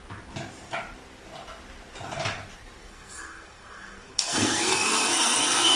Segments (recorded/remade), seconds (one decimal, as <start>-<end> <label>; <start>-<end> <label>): 0.0-2.8 recorded; 2.8-5.8 remade